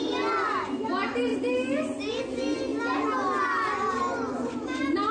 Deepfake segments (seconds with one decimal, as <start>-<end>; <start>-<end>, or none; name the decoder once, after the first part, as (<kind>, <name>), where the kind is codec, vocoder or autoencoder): none